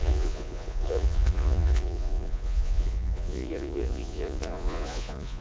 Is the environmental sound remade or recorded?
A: remade